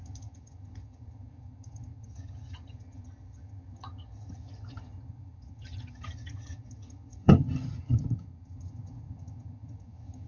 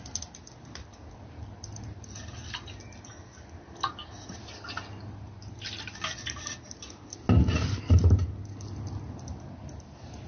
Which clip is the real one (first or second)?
second